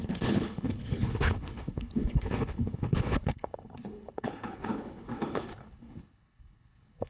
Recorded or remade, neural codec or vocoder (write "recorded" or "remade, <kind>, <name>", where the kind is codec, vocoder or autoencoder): remade, codec, HILCodec